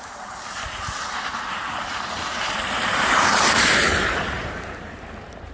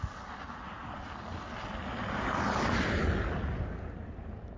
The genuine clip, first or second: second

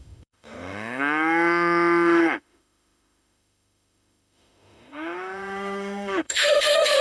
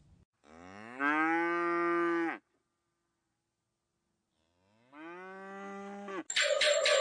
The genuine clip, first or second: second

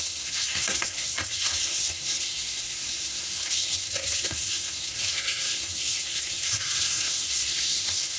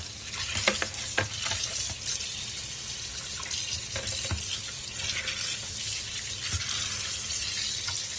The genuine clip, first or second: second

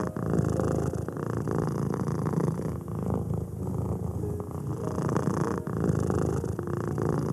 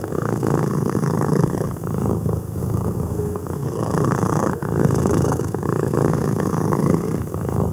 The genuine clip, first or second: first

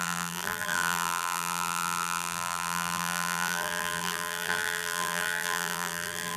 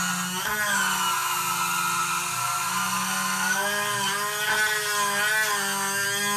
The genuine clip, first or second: second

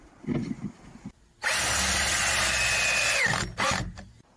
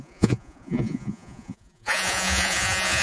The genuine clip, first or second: first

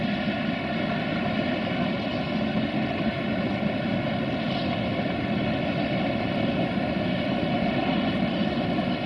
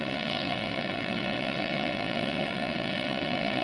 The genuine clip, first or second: first